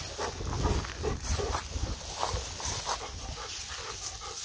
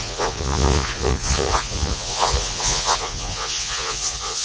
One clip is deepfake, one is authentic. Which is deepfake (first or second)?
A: second